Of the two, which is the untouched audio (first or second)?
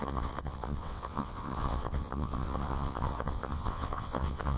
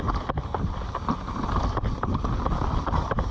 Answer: second